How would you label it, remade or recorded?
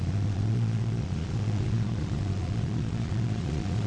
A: remade